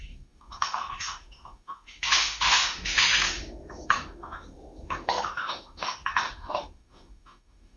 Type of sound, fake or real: fake